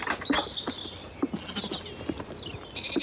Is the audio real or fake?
real